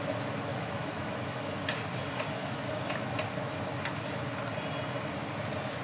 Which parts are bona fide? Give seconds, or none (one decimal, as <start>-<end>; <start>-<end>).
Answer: 0.0-0.5; 1.6-2.4; 3.1-5.8